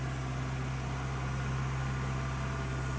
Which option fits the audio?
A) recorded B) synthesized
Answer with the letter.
A